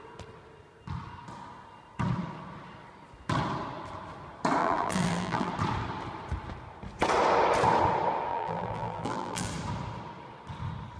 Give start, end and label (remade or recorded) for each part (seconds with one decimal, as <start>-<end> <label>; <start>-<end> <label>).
0.0-4.6 recorded; 4.6-5.5 remade; 5.5-8.3 recorded; 8.3-9.5 remade; 9.5-11.0 recorded